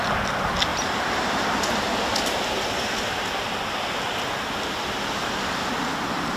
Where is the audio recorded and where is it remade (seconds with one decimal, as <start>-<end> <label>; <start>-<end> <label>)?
0.0-0.7 recorded; 0.7-1.9 remade; 1.9-6.4 recorded